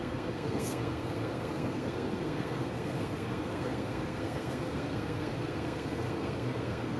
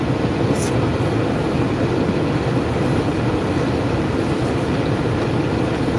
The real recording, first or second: second